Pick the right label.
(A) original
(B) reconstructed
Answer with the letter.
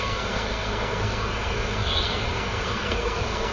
B